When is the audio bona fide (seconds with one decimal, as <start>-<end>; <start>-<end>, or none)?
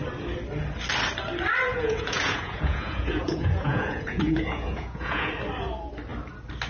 0.0-1.7; 5.3-6.7